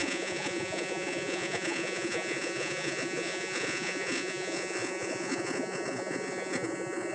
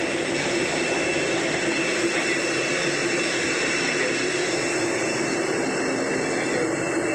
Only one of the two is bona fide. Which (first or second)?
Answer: second